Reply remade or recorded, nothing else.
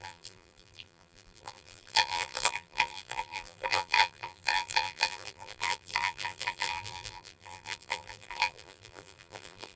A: remade